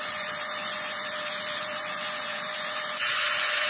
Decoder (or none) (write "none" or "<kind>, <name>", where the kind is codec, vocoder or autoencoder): vocoder, Vocos